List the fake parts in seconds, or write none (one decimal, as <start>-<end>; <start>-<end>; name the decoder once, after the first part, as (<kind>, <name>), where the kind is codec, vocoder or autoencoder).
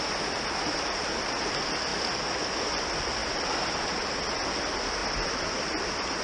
1.9-2.7 (vocoder, BigVGAN v2); 3.2-4.6; 5.0-5.8